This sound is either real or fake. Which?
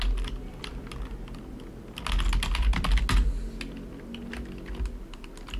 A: real